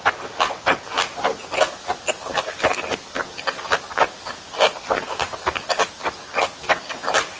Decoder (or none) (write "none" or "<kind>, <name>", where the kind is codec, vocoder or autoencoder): none